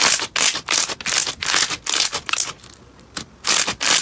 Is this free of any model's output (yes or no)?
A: yes